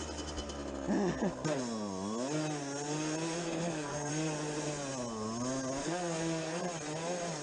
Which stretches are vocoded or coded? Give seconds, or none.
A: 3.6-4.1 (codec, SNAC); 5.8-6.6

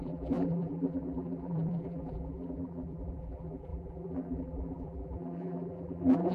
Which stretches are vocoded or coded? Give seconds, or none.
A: 0.0-6.3 (vocoder, BigVGAN v2)

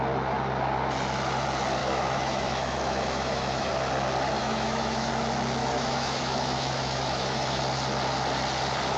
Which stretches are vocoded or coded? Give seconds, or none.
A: 1.8-3.7 (autoencoder, DAC-VAE); 4.4-5.1; 5.6-7.6